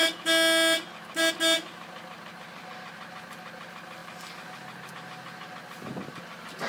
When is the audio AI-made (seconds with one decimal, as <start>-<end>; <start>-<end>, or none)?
none